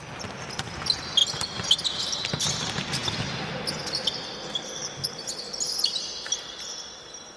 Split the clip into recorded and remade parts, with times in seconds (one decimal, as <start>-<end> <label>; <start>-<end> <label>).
0.0-7.4 recorded

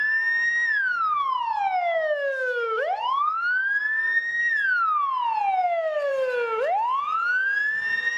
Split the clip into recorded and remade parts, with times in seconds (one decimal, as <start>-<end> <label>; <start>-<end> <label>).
0.0-0.9 recorded; 0.9-3.8 remade; 3.8-5.6 recorded; 5.6-6.1 remade; 6.1-8.2 recorded